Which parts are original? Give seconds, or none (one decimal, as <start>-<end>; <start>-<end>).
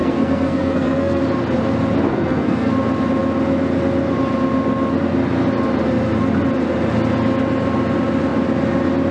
1.2-2.1; 2.7-9.1